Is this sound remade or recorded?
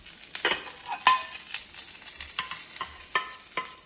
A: recorded